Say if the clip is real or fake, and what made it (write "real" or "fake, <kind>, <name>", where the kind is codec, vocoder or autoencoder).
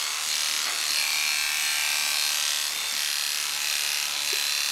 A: real